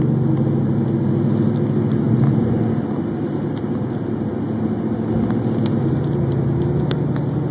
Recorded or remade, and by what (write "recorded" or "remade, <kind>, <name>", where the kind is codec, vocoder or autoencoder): recorded